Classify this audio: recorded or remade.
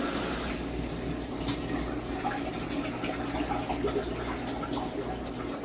recorded